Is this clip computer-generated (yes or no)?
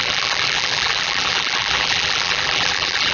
yes